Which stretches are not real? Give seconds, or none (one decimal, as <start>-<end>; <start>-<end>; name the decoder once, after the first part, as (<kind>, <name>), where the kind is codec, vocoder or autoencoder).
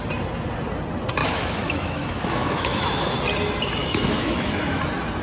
1.2-3.2 (autoencoder, DAC-VAE); 3.8-4.8